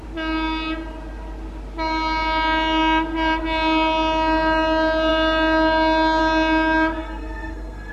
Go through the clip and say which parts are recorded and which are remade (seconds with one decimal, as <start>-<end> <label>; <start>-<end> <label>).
0.0-7.0 recorded; 7.0-7.9 remade